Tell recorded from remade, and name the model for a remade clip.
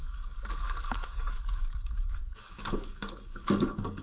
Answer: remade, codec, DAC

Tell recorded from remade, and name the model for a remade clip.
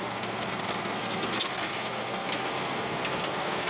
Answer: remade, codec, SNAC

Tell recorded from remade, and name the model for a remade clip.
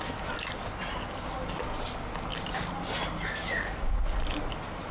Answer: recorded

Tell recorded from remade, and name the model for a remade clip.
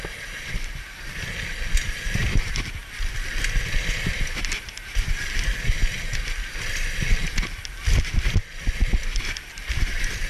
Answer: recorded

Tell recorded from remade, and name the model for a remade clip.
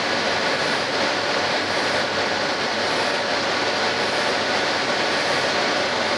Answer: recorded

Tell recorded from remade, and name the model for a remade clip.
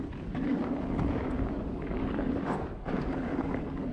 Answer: remade, codec, DAC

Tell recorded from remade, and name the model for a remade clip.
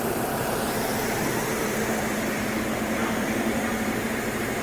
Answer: remade, vocoder, BigVGAN v2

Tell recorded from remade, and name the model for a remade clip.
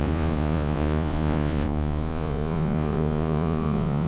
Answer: remade, vocoder, Vocos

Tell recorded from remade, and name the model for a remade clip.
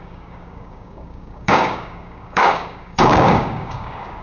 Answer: remade, codec, DAC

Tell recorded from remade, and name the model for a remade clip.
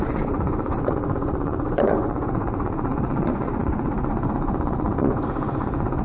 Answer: remade, vocoder, Vocos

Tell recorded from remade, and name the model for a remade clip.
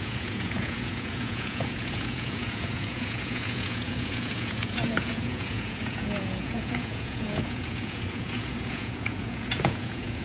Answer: remade, vocoder, Vocos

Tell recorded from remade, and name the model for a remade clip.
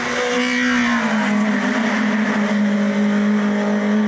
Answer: recorded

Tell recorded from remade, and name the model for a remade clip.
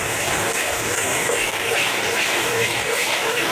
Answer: remade, codec, DAC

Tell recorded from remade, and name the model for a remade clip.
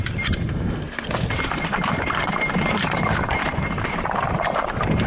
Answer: remade, vocoder, BigVGAN v2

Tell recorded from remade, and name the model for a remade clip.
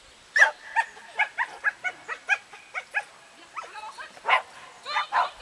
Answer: recorded